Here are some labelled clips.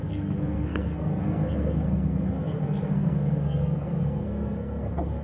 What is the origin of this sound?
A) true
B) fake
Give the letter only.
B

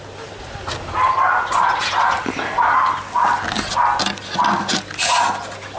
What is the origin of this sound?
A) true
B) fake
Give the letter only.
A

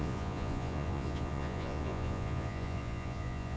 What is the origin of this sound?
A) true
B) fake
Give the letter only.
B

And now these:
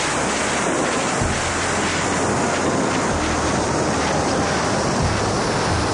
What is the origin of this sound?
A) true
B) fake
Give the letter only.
A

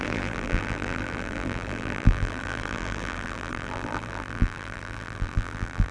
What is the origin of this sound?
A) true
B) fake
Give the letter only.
B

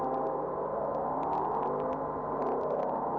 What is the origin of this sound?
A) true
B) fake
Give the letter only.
A